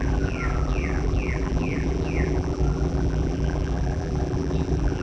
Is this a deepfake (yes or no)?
yes